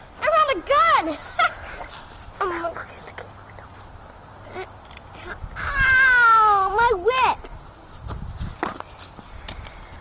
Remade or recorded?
recorded